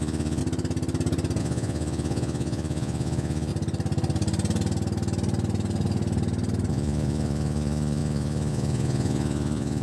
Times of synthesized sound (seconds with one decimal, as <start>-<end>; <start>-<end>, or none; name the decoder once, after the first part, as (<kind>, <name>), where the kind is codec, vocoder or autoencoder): 0.0-0.4 (vocoder, Vocos); 1.4-3.5; 6.7-9.8